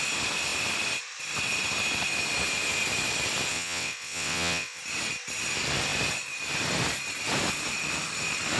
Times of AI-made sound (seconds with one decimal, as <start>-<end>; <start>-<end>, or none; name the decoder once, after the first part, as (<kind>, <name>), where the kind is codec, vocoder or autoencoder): 3.5-4.8 (vocoder, WaveNeXt)